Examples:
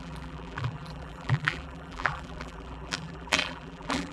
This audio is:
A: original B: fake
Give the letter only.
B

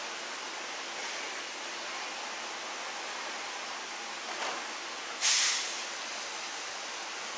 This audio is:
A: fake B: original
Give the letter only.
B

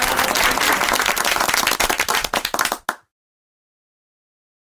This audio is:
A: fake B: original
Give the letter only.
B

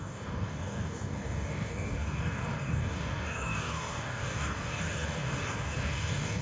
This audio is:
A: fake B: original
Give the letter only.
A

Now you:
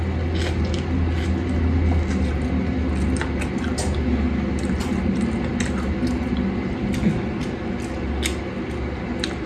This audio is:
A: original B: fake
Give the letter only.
A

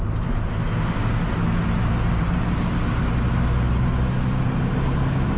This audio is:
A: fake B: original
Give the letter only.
B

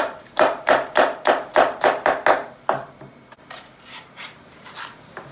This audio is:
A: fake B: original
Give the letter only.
B